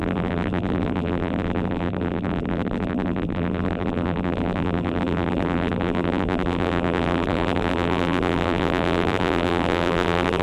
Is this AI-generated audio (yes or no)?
yes